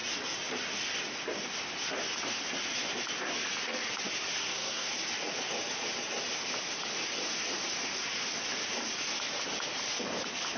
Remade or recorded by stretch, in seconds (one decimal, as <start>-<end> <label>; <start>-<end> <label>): 0.0-4.4 recorded; 4.4-4.9 remade; 4.9-10.6 recorded